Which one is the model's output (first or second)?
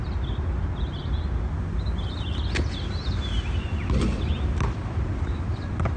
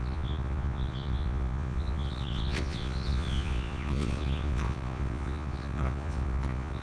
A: second